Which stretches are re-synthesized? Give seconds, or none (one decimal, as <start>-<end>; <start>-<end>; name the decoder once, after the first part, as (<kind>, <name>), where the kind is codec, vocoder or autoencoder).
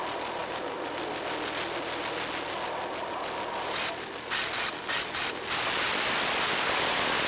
none